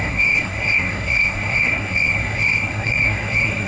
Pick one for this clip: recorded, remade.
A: remade